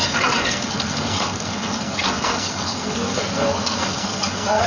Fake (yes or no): yes